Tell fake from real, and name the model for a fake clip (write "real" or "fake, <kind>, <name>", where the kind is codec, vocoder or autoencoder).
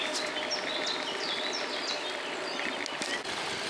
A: real